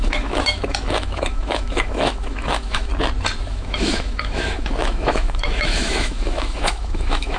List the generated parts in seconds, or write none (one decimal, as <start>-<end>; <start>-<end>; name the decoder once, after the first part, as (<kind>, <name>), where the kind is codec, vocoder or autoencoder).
0.0-2.9 (autoencoder, DAC-VAE); 3.5-7.4